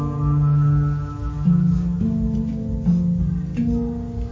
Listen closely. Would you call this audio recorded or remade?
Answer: recorded